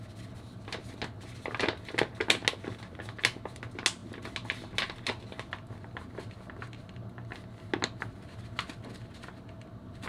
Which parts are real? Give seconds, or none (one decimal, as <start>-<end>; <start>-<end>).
0.0-10.1